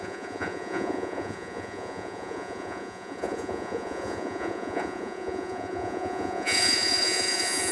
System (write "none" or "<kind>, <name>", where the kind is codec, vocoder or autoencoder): vocoder, Vocos